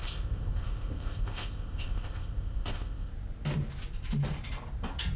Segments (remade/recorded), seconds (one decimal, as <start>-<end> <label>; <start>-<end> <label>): 0.0-3.1 remade; 3.1-5.2 recorded